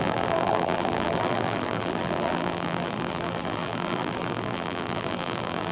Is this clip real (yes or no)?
no